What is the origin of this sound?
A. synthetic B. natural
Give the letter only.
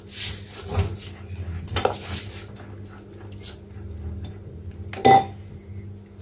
B